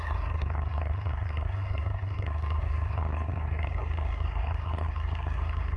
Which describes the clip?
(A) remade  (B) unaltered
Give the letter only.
A